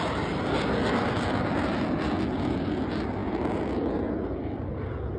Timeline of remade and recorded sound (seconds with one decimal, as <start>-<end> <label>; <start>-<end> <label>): 0.0-5.2 recorded